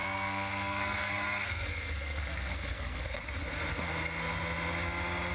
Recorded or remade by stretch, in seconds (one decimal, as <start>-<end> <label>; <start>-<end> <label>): 0.0-3.2 remade; 3.2-5.3 recorded